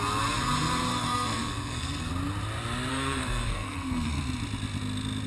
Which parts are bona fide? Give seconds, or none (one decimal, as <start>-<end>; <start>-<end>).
0.0-0.9; 2.1-2.9; 4.1-5.3